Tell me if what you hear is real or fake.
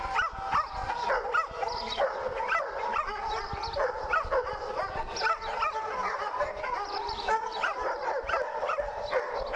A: real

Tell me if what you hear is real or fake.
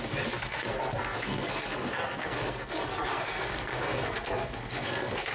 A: fake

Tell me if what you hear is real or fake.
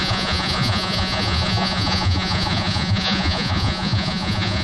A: fake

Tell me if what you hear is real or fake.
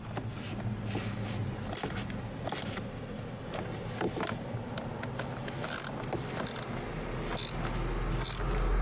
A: real